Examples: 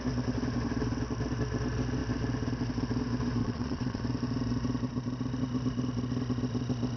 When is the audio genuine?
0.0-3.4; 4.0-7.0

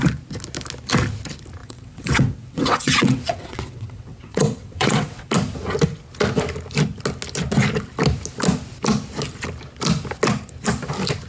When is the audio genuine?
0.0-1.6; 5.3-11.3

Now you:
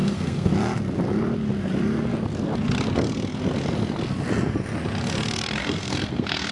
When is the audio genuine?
0.5-5.6

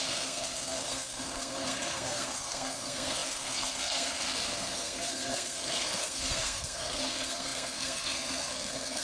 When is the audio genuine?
none